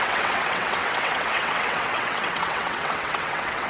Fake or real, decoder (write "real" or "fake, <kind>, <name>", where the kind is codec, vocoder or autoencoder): fake, vocoder, WaveNeXt